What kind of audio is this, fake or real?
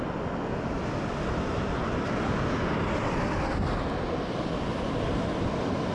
real